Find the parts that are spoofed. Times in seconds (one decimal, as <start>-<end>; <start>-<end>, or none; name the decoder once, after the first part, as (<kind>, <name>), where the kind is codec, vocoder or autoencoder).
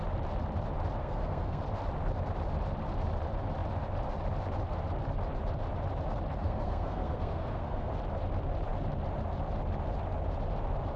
1.0-1.6 (codec, SNAC); 6.4-7.9